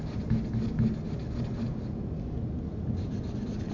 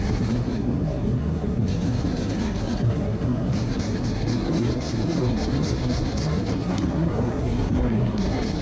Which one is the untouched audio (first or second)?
first